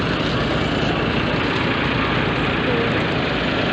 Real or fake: real